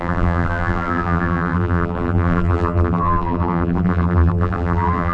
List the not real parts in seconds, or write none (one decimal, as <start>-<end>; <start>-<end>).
0.0-5.1